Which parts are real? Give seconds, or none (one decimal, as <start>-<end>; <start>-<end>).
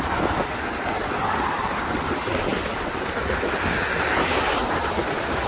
0.0-5.5